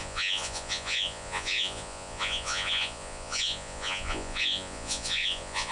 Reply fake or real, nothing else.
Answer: fake